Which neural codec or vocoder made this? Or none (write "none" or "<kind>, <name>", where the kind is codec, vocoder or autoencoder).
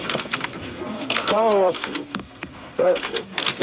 codec, SNAC